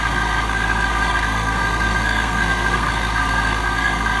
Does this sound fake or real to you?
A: fake